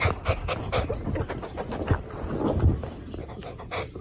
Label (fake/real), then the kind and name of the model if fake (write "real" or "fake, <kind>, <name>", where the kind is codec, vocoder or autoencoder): real